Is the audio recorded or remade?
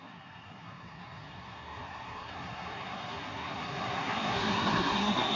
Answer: remade